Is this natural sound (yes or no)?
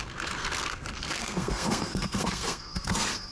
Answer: no